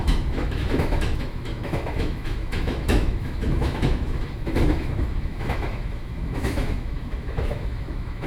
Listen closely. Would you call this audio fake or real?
fake